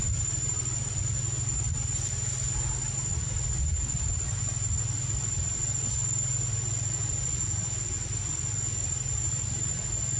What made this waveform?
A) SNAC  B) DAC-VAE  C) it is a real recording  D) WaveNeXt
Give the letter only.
C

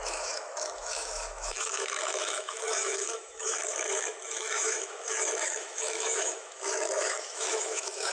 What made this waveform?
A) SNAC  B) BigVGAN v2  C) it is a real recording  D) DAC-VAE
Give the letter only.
D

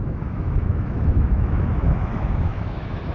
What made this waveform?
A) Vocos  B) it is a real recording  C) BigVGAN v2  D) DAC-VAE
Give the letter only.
D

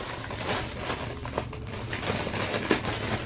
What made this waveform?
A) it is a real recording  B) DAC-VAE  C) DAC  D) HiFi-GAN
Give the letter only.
A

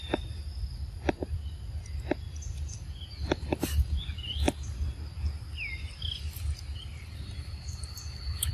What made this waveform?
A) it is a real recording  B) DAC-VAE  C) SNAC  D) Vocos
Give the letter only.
A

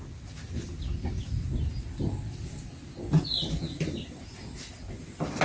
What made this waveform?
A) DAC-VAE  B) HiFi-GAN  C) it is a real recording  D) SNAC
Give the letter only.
C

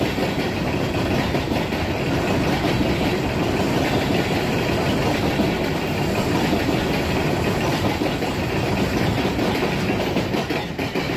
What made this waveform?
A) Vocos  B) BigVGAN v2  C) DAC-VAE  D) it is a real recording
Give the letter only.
D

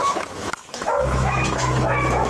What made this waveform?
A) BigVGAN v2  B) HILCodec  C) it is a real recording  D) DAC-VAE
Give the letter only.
D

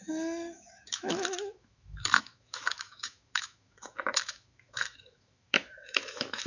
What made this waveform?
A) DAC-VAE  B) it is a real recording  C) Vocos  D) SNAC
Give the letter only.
A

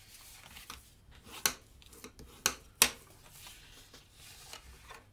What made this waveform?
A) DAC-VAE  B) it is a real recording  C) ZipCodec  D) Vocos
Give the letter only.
B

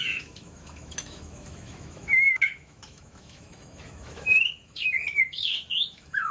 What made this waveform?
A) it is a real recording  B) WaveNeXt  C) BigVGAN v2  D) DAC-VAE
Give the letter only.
D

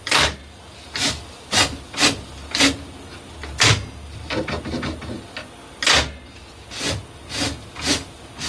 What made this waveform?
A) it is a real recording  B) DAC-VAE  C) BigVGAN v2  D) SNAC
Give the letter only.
A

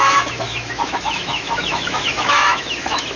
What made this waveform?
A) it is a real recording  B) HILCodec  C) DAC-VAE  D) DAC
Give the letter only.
C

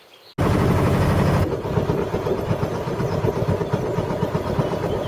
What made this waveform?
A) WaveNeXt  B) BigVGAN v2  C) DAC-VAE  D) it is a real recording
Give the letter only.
D